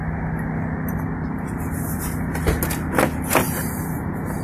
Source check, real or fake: real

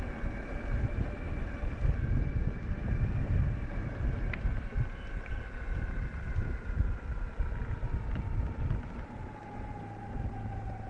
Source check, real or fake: real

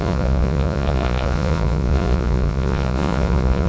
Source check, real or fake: fake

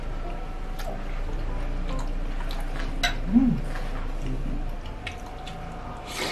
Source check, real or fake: real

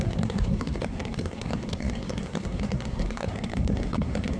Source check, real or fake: fake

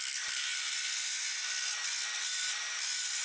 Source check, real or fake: real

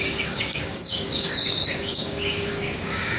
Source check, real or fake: fake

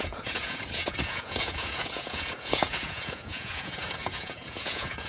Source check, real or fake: fake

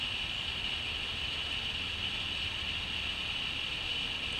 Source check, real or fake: real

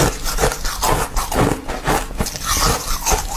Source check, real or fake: real